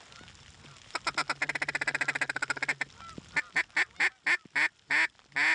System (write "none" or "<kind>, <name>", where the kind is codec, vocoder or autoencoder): none